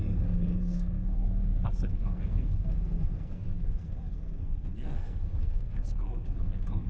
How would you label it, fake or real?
fake